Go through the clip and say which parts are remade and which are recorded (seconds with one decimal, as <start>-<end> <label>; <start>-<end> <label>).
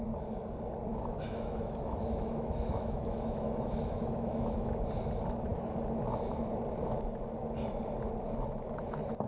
0.0-0.9 recorded; 0.9-4.8 remade; 4.8-9.3 recorded